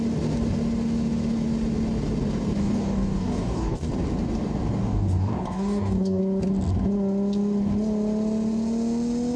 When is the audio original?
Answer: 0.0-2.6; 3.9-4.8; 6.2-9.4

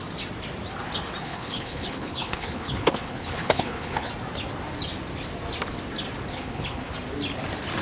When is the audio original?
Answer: 0.0-1.2; 4.1-6.3; 6.9-7.8

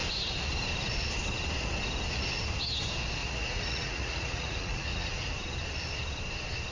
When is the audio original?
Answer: 0.0-3.2; 5.3-6.7

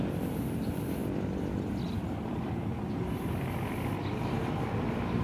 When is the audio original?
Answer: 1.0-1.9; 2.7-3.4

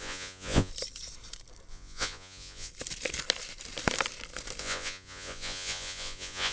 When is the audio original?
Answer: 0.7-1.7; 2.7-4.6

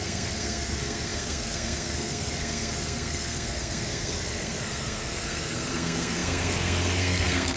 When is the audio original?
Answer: none

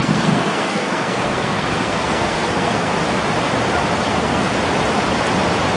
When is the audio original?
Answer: 2.9-4.1; 4.5-5.8